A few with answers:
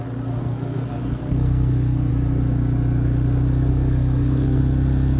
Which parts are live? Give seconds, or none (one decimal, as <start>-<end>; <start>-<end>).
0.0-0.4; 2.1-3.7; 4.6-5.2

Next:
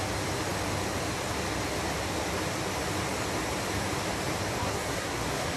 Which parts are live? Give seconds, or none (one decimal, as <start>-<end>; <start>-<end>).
0.0-4.6

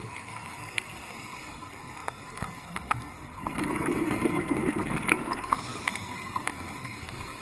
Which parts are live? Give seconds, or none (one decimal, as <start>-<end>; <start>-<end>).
none

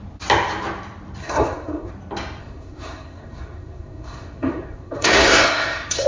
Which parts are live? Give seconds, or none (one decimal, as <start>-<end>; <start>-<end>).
0.0-1.2; 1.9-2.4

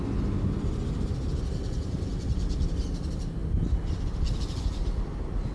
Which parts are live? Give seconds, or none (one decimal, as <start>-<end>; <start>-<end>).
0.0-5.5

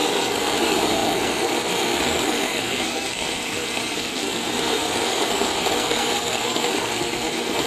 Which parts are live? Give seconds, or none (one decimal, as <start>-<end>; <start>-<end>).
none